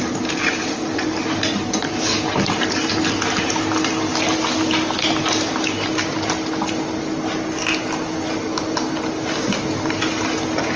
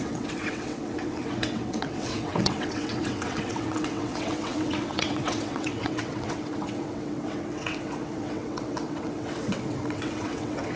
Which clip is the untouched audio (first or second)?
first